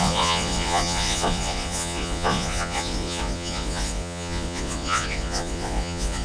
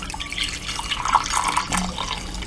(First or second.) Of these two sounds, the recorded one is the second